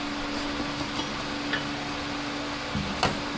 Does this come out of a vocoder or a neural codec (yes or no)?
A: no